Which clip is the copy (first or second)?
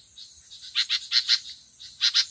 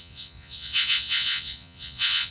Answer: second